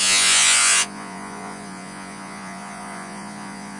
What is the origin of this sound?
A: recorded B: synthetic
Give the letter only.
B